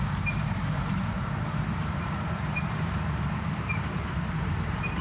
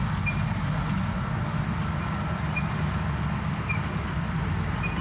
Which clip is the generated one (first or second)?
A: first